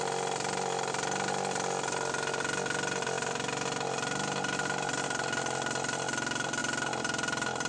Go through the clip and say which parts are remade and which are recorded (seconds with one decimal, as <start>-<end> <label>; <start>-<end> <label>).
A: 0.0-7.7 recorded